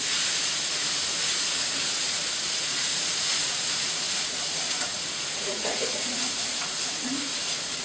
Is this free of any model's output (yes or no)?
no